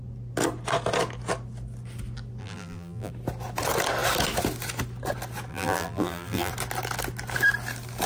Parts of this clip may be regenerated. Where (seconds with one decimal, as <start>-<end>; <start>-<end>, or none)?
2.4-3.1; 5.5-6.5